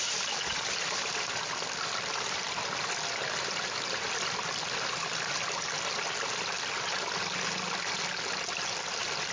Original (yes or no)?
yes